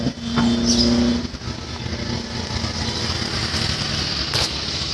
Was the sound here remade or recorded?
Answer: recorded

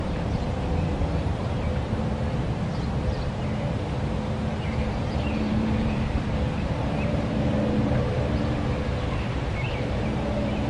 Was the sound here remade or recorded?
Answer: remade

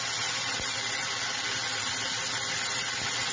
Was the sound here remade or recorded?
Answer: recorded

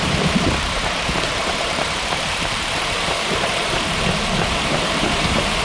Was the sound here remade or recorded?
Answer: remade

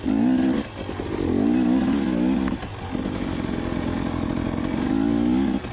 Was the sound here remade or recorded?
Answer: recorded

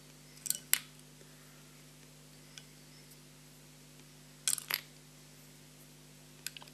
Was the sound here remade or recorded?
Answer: recorded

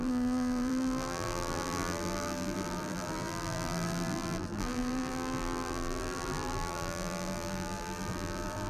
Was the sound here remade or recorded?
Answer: remade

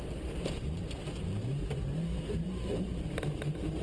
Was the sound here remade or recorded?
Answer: remade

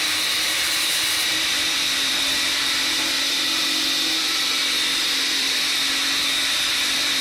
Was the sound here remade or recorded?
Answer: remade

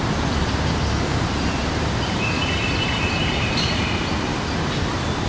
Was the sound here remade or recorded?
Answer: remade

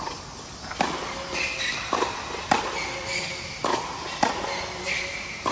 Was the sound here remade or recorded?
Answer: recorded